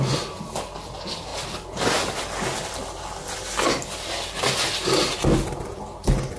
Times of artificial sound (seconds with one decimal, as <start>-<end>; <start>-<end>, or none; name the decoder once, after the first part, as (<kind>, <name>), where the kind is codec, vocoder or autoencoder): none